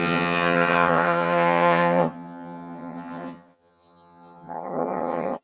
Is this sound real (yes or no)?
no